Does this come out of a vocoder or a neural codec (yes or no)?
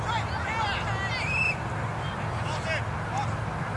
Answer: no